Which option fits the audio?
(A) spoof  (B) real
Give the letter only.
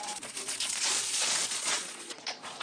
A